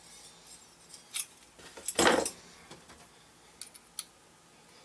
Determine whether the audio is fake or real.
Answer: real